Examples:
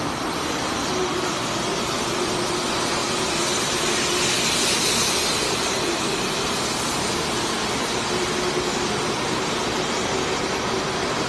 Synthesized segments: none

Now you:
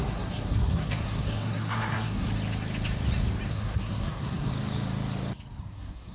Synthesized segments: 0.0-2.3 (codec, SNAC); 3.5-4.5; 5.6-6.1

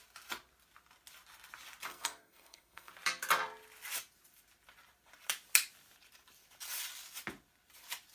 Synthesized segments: 1.9-2.9 (codec, SNAC)

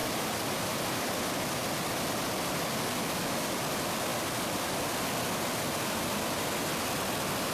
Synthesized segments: 0.0-1.2 (vocoder, BigVGAN v2)

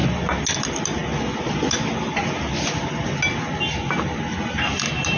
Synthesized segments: none

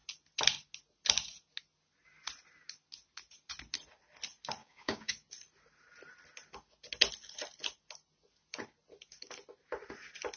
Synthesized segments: 4.6-5.1 (codec, DAC)